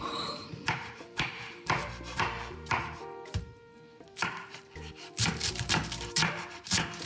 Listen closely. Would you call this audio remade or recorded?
remade